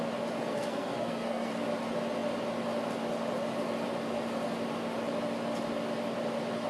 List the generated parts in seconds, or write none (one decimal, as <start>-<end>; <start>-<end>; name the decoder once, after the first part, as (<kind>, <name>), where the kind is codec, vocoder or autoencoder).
0.4-1.5 (codec, SNAC)